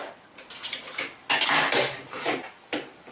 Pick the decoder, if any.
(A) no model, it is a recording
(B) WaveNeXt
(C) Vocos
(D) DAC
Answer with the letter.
A